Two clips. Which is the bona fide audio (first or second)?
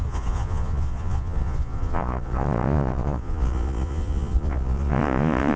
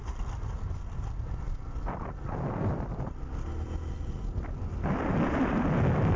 second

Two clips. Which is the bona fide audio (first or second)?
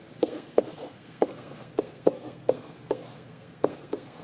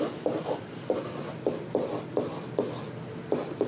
second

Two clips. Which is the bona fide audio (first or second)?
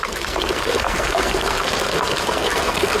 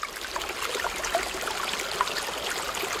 second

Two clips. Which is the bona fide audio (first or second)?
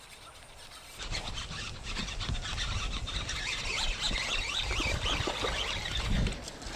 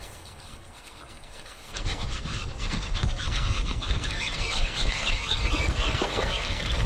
first